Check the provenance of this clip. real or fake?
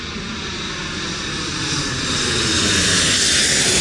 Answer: real